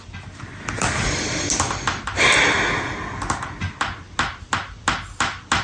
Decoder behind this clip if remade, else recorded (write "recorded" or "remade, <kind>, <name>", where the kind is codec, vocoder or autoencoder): recorded